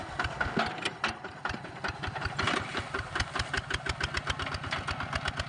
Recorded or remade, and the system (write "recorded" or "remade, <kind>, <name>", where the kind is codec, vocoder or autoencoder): recorded